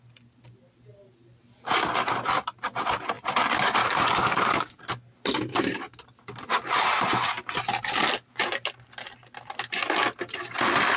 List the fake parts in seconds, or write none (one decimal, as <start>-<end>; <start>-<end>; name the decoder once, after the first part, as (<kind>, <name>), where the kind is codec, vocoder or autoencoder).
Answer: 3.8-4.8 (codec, DAC); 5.5-6.0